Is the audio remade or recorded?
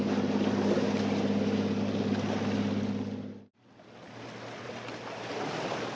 recorded